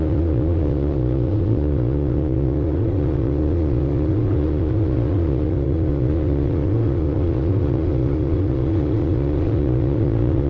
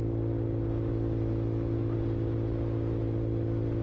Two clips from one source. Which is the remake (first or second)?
first